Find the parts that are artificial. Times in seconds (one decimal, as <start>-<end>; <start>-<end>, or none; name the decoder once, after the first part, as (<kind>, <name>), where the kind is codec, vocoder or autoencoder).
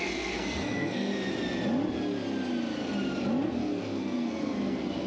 0.0-1.1 (codec, SNAC); 3.6-5.1